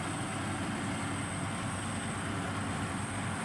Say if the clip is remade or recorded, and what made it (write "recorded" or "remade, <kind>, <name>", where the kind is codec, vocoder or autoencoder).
recorded